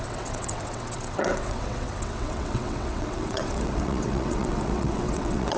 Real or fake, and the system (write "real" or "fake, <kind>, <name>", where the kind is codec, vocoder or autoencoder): fake, vocoder, WaveNeXt